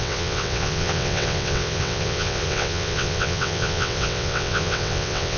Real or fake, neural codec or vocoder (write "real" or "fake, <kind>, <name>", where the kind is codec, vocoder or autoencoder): fake, vocoder, WaveNeXt